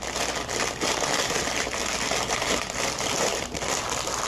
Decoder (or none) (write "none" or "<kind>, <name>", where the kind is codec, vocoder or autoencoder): vocoder, BigVGAN v2